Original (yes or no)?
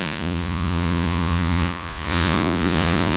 no